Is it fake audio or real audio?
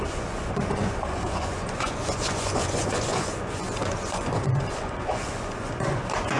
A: fake